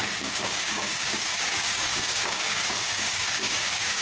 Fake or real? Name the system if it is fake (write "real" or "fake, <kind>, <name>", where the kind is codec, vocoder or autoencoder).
fake, codec, DAC